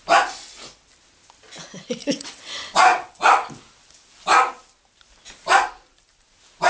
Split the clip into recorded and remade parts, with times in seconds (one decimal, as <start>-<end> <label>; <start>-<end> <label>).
0.0-2.0 recorded; 2.0-2.5 remade; 2.5-2.9 recorded; 2.9-3.5 remade; 3.5-6.7 recorded